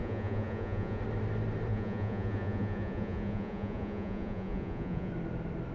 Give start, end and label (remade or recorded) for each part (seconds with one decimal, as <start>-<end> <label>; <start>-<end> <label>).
0.0-1.0 remade; 1.0-1.7 recorded; 1.7-5.1 remade; 5.1-5.7 recorded